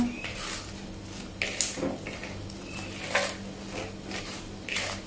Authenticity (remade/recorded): recorded